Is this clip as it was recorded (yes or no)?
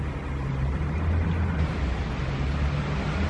yes